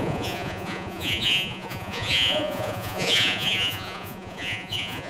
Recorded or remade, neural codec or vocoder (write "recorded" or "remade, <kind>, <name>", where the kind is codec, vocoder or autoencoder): remade, vocoder, Vocos